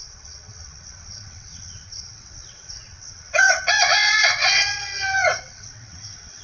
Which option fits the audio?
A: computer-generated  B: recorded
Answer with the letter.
A